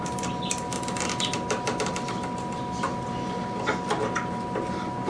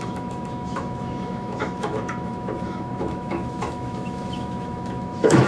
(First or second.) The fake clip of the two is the second